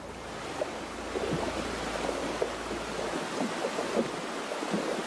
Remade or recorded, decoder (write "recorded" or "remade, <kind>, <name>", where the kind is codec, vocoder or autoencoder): recorded